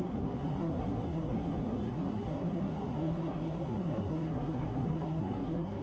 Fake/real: fake